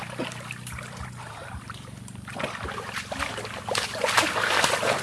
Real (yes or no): yes